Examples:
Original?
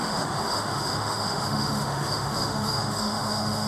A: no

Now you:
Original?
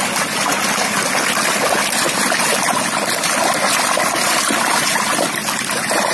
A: yes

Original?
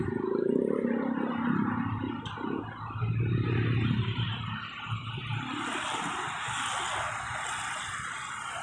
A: yes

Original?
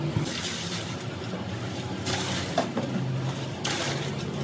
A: yes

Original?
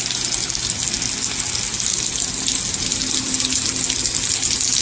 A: yes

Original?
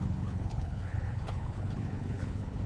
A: no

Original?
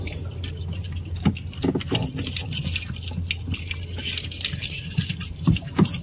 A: yes